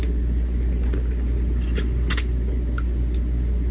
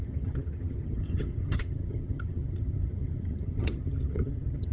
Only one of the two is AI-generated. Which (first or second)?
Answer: second